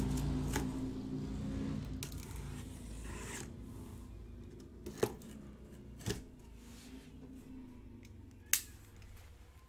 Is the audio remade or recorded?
recorded